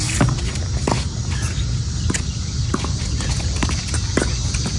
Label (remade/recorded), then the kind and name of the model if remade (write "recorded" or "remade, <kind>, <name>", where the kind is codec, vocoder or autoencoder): recorded